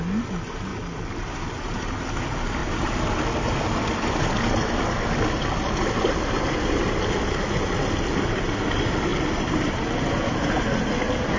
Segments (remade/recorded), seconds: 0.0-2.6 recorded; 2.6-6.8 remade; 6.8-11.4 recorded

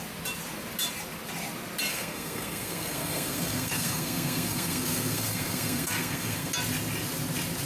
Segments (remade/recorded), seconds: 0.0-1.9 recorded; 1.9-6.5 remade; 6.5-7.7 recorded

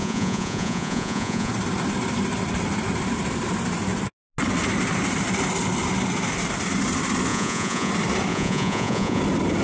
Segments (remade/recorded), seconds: 0.0-1.5 remade; 1.5-7.3 recorded; 7.3-7.9 remade; 7.9-8.3 recorded; 8.3-9.2 remade; 9.2-9.6 recorded

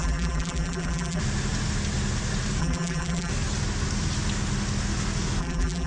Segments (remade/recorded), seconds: 0.0-1.2 remade; 1.2-2.6 recorded; 2.6-3.3 remade; 3.3-5.4 recorded; 5.4-5.9 remade

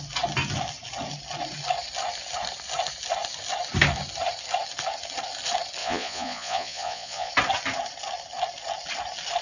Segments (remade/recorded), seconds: 0.0-5.8 recorded; 5.8-7.3 remade; 7.3-9.4 recorded

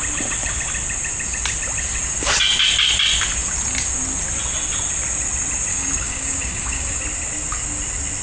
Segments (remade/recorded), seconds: 0.0-5.7 recorded; 5.7-7.0 remade; 7.0-8.2 recorded

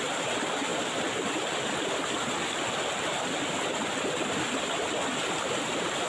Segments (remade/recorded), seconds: 0.0-6.1 recorded